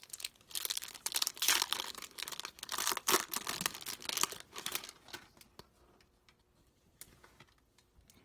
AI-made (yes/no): no